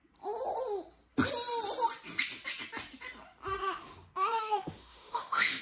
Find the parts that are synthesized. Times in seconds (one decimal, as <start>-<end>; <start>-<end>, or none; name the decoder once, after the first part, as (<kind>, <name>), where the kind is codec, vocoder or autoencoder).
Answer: 3.6-5.6 (autoencoder, DAC-VAE)